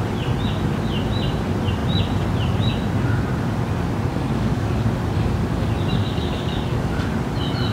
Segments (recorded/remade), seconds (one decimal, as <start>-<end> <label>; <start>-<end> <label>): 0.0-4.1 recorded; 4.1-4.7 remade; 4.7-6.0 recorded; 6.0-7.1 remade; 7.1-7.7 recorded

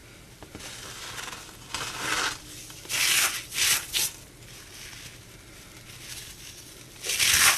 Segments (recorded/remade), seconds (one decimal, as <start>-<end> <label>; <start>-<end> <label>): 0.0-6.1 recorded; 6.1-6.7 remade; 6.7-7.6 recorded

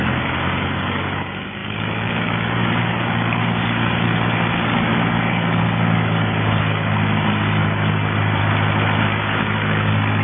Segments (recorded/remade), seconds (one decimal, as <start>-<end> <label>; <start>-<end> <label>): 0.0-8.4 remade; 8.4-9.0 recorded; 9.0-10.2 remade

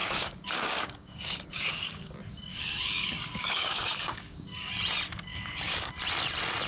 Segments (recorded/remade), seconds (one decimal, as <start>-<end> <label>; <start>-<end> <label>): 0.0-2.1 remade; 2.1-2.5 recorded; 2.5-4.7 remade; 4.7-5.3 recorded; 5.3-5.9 remade; 5.9-6.7 recorded